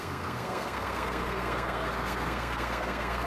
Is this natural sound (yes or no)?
no